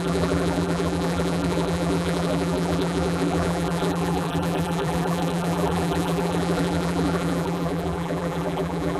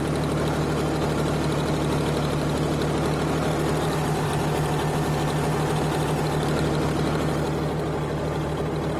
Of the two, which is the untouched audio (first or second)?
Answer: second